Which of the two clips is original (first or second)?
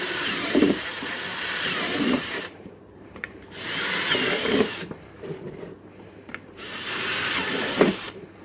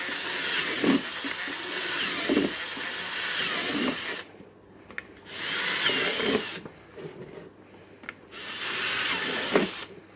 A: second